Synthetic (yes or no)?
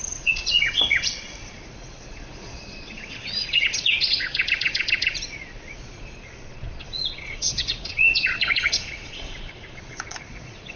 yes